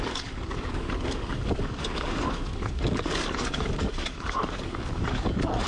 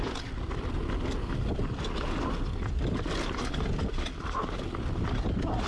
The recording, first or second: second